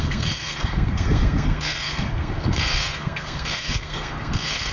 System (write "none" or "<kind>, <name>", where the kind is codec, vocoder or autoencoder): codec, SNAC